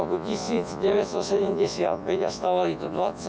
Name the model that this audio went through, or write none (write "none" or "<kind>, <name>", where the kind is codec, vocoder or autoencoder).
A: vocoder, Vocos